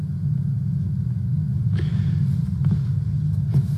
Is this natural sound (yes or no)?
yes